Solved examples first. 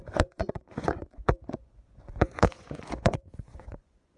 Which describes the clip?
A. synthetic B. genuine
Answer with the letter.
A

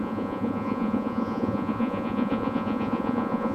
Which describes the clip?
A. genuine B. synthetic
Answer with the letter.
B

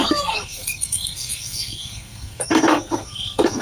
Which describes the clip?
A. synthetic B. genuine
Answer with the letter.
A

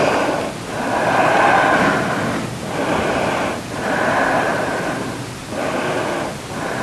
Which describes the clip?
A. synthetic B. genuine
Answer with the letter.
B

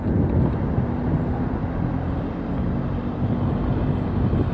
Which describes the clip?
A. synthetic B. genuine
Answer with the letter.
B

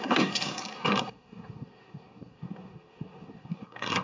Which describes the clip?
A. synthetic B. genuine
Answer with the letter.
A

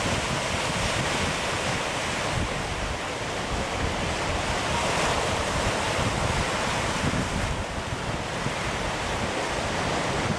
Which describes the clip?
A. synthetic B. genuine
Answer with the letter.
B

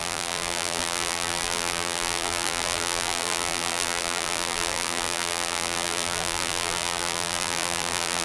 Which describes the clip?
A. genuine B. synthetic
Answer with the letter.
B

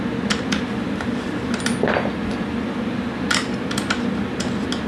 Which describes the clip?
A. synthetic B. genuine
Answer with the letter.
B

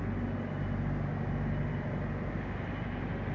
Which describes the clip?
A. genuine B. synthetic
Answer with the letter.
A